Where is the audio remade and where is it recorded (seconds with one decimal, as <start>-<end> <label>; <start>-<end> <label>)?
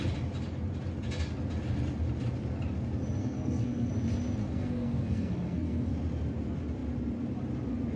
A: 0.0-3.2 recorded; 3.2-3.9 remade; 3.9-4.4 recorded; 4.4-5.9 remade; 5.9-8.0 recorded